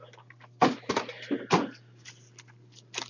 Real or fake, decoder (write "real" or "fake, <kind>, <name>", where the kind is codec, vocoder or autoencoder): real